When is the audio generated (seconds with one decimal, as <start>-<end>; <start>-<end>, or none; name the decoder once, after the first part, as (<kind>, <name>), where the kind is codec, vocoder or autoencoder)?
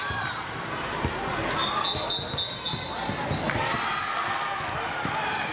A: none